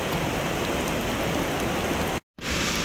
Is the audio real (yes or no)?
yes